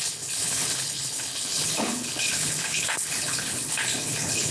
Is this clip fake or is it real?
fake